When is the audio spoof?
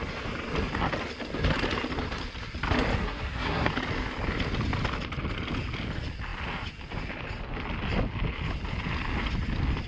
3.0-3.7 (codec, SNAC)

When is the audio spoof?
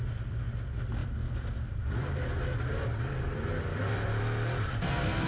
1.0-4.2 (vocoder, BigVGAN v2)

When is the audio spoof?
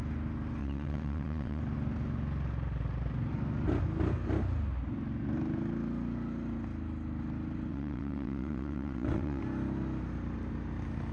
0.6-1.6 (vocoder, WaveNeXt); 7.7-9.4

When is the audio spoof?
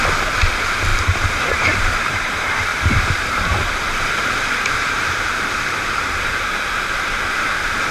0.9-2.3 (vocoder, BigVGAN v2); 2.7-6.4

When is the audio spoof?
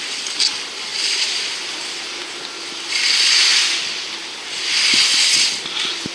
none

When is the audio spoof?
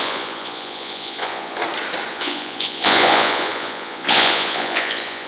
0.0-1.6 (vocoder, Vocos); 2.1-5.3